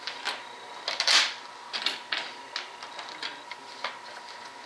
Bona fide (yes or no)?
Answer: yes